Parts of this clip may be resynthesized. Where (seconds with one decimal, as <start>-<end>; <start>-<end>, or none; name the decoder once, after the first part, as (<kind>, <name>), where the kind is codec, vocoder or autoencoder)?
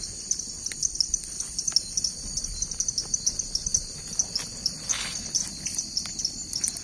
none